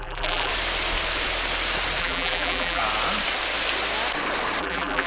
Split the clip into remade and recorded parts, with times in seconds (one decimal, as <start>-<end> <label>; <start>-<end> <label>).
0.0-0.5 remade; 0.5-2.0 recorded; 2.0-2.8 remade; 2.8-4.6 recorded; 4.6-5.1 remade

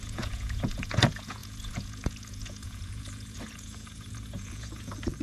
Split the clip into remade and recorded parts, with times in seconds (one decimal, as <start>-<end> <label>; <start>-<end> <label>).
0.0-5.2 remade

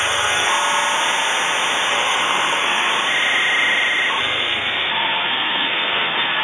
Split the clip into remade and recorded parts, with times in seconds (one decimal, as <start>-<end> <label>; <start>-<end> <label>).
0.0-0.5 remade; 0.5-1.9 recorded; 1.9-2.9 remade; 2.9-4.2 recorded; 4.2-6.4 remade

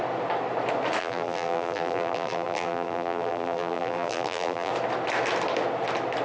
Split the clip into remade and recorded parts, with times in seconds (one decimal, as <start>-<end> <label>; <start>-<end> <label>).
0.0-1.0 recorded; 1.0-4.7 remade; 4.7-6.2 recorded

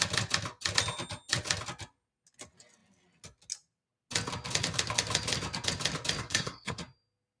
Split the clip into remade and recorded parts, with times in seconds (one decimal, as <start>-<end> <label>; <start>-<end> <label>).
0.0-6.2 recorded; 6.2-6.8 remade; 6.8-7.4 recorded

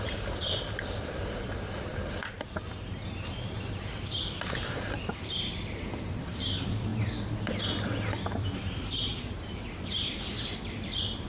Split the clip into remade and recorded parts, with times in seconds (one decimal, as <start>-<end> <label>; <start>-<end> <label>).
0.0-6.9 remade; 6.9-7.6 recorded; 7.6-9.1 remade; 9.1-9.8 recorded; 9.8-11.3 remade